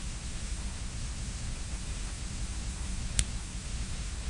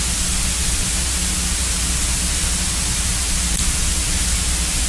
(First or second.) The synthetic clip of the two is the first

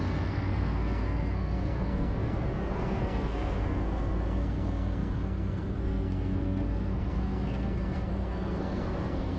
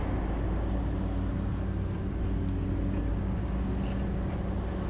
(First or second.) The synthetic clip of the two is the first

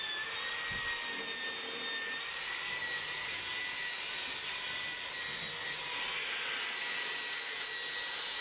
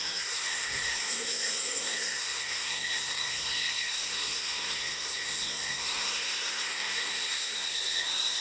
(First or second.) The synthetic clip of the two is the second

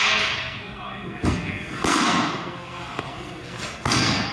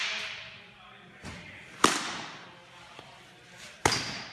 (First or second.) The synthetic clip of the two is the first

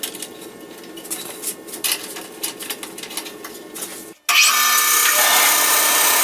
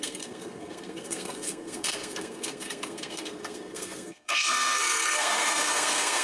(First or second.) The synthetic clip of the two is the second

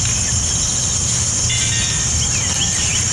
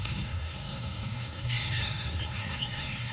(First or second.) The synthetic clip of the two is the second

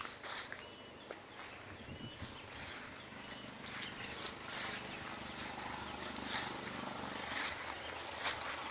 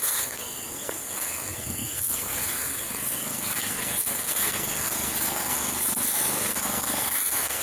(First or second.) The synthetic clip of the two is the second